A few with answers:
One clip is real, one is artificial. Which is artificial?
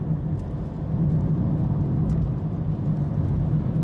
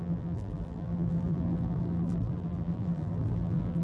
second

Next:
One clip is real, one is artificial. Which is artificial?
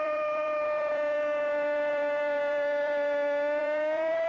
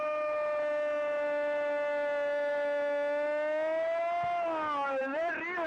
first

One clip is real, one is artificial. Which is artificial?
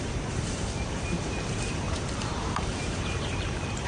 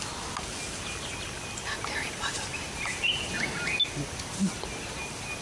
first